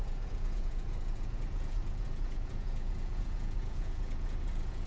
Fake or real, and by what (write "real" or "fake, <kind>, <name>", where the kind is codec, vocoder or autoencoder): fake, vocoder, Vocos